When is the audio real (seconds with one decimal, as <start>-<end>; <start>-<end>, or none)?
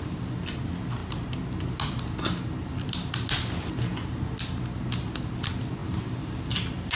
0.0-7.0